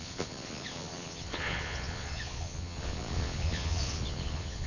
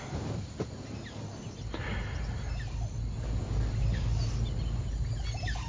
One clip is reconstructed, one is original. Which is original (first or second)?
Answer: second